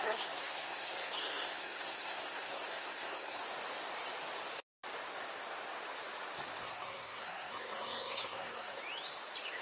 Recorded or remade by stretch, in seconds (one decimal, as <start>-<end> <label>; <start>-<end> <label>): 0.0-3.4 remade; 3.4-6.6 recorded; 6.6-8.8 remade; 8.8-9.6 recorded